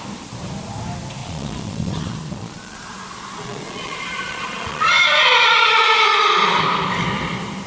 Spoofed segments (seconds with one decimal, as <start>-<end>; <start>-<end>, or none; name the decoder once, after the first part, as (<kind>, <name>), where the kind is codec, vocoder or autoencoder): 1.2-5.8 (vocoder, Vocos)